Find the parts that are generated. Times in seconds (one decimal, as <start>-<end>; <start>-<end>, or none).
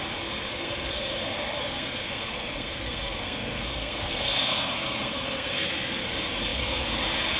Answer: 0.5-1.1; 1.6-6.0